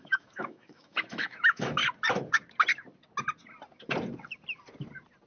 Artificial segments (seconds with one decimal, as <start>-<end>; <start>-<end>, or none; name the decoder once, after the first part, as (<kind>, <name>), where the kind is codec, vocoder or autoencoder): 0.0-1.8 (autoencoder, DAC-VAE)